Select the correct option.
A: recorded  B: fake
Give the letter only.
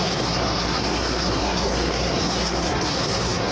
B